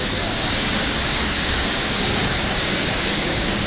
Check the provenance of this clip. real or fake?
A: fake